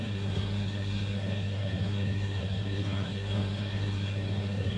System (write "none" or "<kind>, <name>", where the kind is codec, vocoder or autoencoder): codec, SNAC